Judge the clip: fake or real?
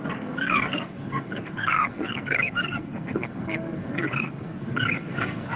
fake